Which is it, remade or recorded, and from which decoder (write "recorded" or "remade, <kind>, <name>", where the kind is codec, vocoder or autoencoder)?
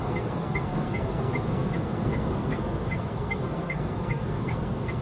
remade, codec, SNAC